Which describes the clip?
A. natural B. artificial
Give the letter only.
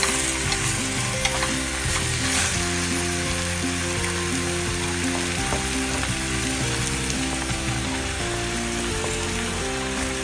A